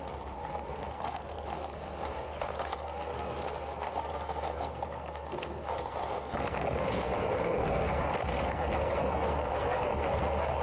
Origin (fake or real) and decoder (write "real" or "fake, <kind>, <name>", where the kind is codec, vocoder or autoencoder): fake, codec, SNAC